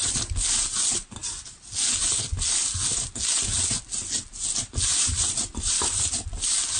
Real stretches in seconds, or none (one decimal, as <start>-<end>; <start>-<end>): 0.0-4.9; 6.1-6.8